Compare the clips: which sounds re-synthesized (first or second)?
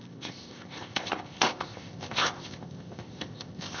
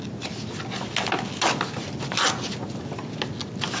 first